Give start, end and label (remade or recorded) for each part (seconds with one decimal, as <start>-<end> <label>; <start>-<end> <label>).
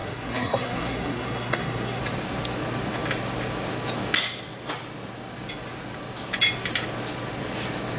0.0-2.0 remade; 2.0-8.0 recorded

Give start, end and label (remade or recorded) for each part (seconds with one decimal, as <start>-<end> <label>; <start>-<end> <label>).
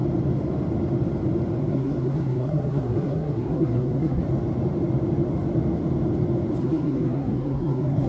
0.0-1.6 recorded; 1.6-4.2 remade; 4.2-6.6 recorded; 6.6-8.1 remade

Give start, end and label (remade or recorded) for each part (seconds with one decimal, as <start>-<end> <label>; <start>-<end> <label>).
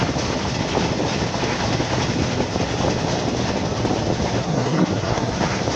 0.0-4.4 recorded; 4.4-5.3 remade; 5.3-5.8 recorded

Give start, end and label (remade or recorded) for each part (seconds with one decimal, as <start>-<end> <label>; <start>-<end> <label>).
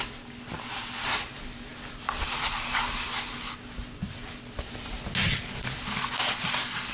0.0-6.9 recorded